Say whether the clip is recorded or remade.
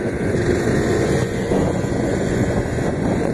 remade